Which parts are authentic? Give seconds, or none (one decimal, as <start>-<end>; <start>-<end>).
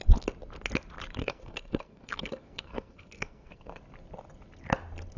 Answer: 0.0-1.2; 3.8-5.2